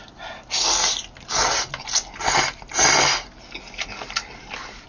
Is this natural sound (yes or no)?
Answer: yes